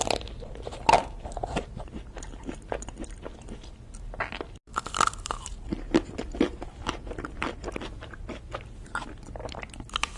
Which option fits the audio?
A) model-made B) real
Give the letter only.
B